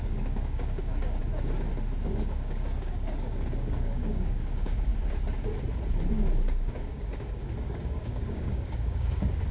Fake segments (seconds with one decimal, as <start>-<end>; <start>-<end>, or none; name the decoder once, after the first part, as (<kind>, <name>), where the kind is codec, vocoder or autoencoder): 0.0-1.2 (codec, DAC); 2.0-4.9; 6.1-9.5